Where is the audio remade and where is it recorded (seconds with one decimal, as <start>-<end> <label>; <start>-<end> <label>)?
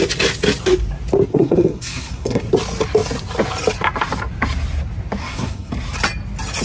0.0-1.3 recorded; 1.3-2.5 remade; 2.5-5.2 recorded; 5.2-5.7 remade; 5.7-6.6 recorded